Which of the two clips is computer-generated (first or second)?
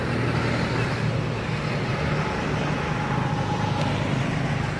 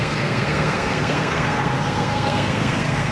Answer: second